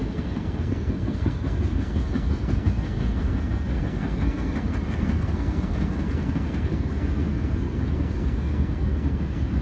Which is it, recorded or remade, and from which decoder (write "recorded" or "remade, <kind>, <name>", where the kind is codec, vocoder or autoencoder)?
remade, codec, SNAC